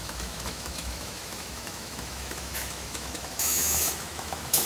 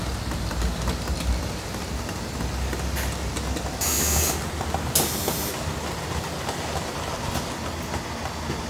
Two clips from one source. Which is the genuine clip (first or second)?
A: second